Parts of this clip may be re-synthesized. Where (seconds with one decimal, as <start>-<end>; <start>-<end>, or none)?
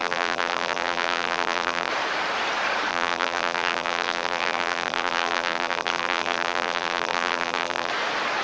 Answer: 0.0-1.9; 2.9-7.9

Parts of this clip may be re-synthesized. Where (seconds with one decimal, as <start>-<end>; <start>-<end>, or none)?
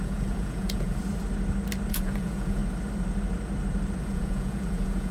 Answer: 0.0-1.0; 1.9-2.6; 4.0-5.1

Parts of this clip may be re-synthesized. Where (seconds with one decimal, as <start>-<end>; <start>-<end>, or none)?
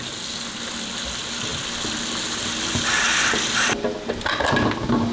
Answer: none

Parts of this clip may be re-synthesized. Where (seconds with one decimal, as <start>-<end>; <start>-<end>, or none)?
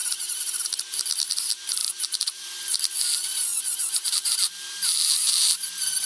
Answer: 0.0-0.7; 1.8-2.5; 3.5-4.1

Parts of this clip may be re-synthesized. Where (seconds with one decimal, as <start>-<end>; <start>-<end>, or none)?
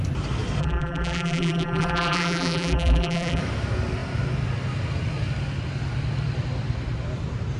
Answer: 0.6-3.4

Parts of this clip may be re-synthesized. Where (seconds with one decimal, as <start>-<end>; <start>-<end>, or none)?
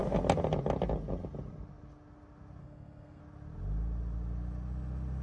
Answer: 2.6-3.2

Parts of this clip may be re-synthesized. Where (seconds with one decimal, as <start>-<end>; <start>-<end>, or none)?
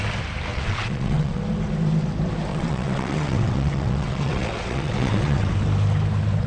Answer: 0.5-1.4; 2.5-5.5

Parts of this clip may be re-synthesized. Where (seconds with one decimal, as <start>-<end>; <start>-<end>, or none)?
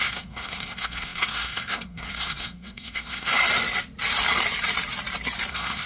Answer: 0.0-3.3; 5.5-5.9